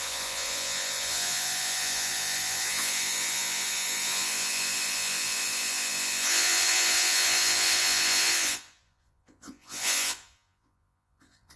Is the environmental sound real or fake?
fake